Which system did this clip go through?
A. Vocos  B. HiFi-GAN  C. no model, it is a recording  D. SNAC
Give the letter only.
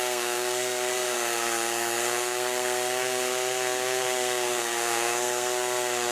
D